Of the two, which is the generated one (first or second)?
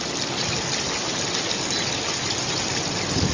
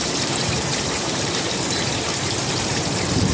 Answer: second